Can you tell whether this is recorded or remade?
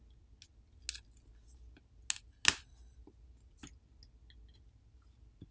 recorded